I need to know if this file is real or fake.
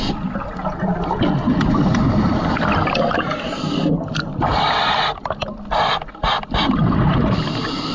real